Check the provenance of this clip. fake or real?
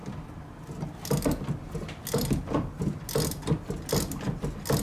real